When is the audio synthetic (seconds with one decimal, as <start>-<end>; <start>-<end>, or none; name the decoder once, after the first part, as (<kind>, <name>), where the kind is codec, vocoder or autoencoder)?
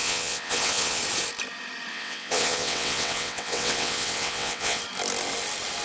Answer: 0.0-1.0 (vocoder, WaveNeXt); 1.9-4.8